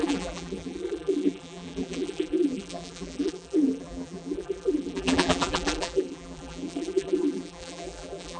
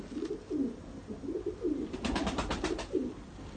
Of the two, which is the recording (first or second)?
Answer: second